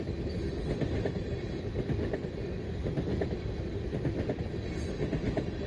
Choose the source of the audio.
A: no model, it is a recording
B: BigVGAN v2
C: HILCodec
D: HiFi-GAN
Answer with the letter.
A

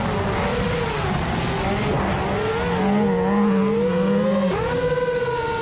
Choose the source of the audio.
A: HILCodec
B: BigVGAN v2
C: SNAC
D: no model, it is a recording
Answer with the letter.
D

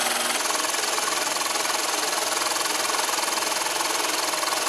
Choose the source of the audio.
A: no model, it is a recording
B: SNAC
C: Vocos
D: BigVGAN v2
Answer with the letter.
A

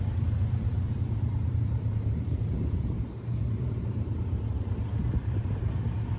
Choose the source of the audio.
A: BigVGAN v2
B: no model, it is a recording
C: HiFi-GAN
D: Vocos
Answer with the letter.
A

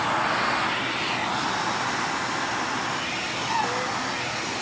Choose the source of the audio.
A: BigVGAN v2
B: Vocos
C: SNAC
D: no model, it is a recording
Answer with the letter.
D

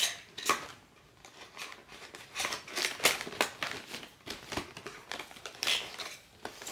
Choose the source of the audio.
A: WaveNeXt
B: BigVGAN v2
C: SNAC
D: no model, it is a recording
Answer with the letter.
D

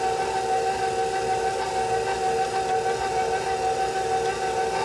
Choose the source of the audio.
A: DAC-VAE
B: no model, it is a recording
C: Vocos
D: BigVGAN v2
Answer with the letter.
B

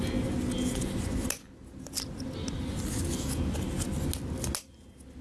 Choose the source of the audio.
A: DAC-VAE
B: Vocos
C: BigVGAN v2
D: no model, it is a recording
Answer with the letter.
D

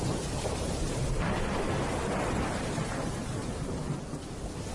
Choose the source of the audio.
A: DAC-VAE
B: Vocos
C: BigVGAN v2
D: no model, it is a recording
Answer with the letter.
D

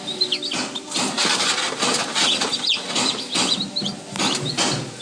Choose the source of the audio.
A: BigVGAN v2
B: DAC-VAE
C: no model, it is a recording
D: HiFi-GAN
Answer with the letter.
C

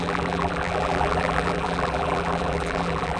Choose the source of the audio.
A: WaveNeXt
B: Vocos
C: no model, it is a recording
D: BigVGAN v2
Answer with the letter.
D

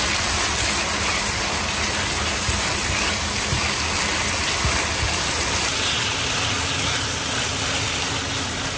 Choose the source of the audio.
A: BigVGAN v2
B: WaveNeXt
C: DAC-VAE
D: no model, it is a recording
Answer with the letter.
D